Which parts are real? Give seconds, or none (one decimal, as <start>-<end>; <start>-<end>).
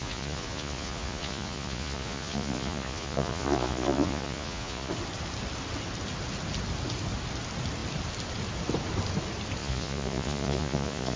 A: 4.9-9.6